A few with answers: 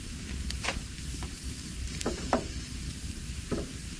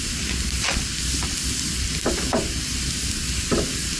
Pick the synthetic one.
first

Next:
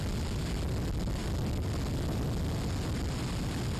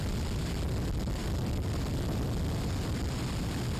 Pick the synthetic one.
second